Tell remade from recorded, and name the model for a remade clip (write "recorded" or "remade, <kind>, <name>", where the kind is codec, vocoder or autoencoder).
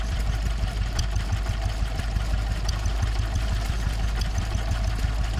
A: recorded